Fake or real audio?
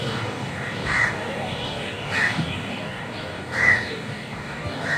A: fake